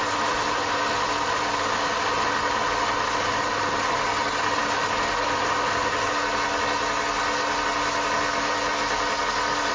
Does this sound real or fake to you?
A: real